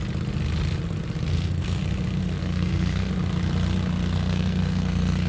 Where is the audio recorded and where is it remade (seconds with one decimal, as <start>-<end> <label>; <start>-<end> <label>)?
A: 0.0-1.3 recorded; 1.3-1.8 remade; 1.8-2.2 recorded; 2.2-3.1 remade; 3.1-4.0 recorded; 4.0-5.3 remade